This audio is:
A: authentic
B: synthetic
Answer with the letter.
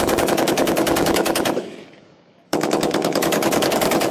B